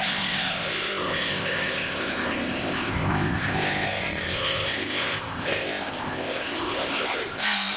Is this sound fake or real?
fake